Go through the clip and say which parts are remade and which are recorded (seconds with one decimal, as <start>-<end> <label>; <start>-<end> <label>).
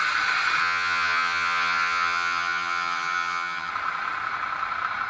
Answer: 0.0-0.6 recorded; 0.6-3.7 remade; 3.7-5.1 recorded